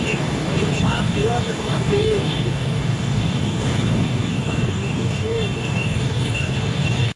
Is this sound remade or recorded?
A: remade